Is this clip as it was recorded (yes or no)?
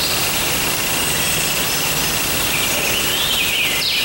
yes